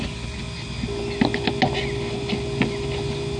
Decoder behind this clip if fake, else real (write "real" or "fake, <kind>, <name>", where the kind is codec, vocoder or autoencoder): real